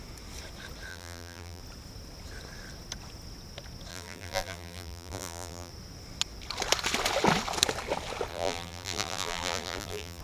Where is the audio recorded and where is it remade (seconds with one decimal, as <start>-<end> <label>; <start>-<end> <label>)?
0.0-0.9 recorded; 0.9-1.6 remade; 1.6-3.9 recorded; 3.9-5.7 remade; 5.7-8.3 recorded; 8.3-10.2 remade